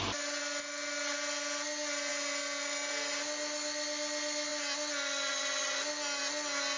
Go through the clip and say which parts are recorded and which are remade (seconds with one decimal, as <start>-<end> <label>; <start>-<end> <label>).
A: 0.0-6.8 recorded